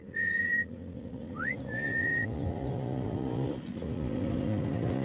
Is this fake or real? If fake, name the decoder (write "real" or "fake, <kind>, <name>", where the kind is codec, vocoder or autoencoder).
fake, vocoder, Vocos